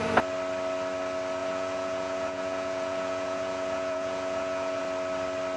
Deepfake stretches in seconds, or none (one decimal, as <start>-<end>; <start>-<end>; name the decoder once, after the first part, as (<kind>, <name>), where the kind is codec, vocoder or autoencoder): 1.4-4.8 (vocoder, Vocos)

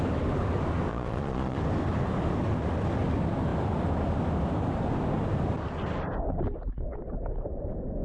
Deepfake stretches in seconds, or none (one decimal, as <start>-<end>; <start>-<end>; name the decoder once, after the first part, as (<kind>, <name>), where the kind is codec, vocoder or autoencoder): 0.9-1.6 (vocoder, Vocos)

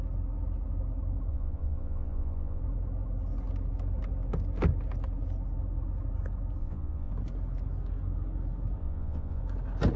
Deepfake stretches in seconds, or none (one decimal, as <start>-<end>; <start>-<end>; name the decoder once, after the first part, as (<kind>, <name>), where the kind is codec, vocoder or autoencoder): 1.3-2.6 (vocoder, Vocos); 6.6-7.1; 8.8-9.4